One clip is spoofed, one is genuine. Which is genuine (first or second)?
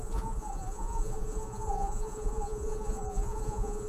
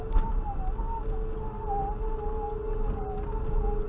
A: second